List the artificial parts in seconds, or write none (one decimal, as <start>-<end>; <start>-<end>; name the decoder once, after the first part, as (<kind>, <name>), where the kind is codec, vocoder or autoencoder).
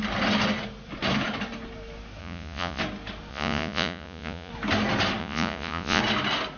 2.2-2.8 (vocoder, Vocos); 3.3-4.5; 5.2-6.0